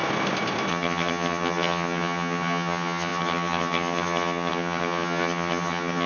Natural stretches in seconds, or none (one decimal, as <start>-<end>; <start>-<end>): 0.0-0.7